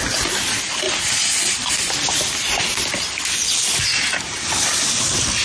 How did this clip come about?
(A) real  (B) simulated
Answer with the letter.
A